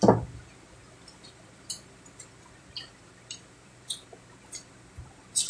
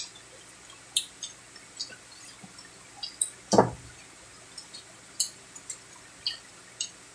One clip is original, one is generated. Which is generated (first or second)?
first